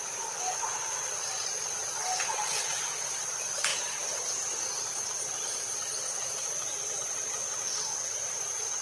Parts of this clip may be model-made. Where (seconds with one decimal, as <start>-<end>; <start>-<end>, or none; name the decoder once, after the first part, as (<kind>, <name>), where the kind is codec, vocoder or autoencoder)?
none